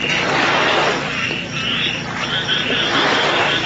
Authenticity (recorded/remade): recorded